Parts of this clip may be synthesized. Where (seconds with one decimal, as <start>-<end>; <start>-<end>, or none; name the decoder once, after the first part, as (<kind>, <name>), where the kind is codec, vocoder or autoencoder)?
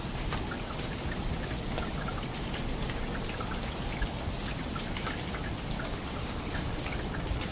none